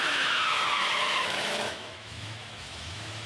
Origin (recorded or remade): remade